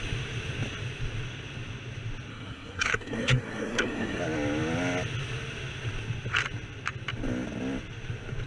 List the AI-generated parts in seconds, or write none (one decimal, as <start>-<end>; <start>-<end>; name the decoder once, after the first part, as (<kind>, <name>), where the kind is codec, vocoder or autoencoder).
2.3-4.2 (codec, SNAC)

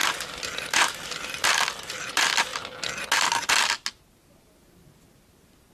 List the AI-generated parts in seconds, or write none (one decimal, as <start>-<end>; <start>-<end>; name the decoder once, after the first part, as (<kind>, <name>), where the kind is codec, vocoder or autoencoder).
none

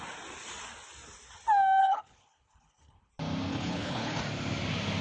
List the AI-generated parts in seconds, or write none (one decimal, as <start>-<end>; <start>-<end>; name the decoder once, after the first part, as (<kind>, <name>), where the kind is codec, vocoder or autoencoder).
1.8-3.1 (codec, HILCodec); 3.5-4.2

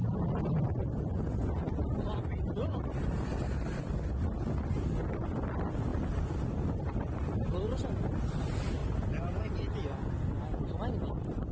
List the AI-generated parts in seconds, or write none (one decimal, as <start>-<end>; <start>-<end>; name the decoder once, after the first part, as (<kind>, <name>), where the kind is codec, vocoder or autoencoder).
none